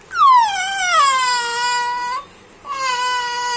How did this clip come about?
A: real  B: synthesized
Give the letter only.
A